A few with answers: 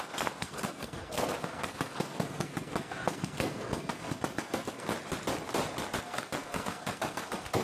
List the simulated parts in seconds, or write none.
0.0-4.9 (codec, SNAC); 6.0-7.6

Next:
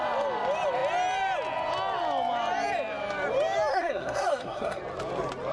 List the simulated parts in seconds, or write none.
3.7-4.8 (codec, SNAC)

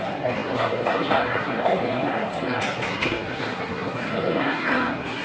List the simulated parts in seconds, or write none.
0.0-5.2 (codec, SNAC)

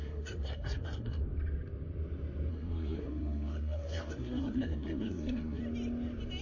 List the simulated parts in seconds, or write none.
0.0-1.2 (codec, SNAC); 2.5-5.6